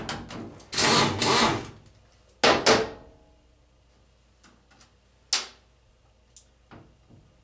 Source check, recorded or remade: recorded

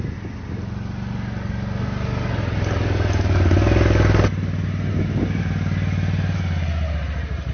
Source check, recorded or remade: recorded